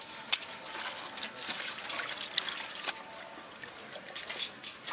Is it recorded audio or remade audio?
recorded